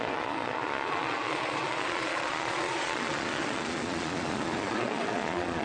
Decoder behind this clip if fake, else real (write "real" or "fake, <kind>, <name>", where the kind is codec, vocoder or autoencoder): fake, vocoder, Vocos